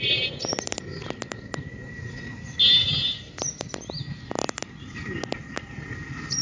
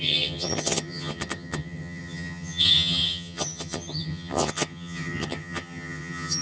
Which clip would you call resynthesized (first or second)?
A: second